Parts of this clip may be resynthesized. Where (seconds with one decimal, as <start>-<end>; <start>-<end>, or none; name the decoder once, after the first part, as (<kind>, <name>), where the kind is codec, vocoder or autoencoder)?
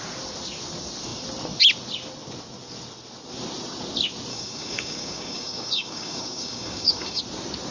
4.3-7.2 (codec, DAC)